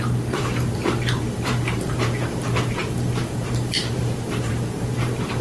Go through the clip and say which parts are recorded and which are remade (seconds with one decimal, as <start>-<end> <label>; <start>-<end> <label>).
0.0-5.4 remade